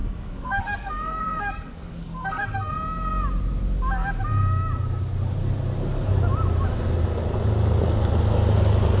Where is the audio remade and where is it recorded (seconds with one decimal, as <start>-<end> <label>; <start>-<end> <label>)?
0.0-2.7 remade; 2.7-9.0 recorded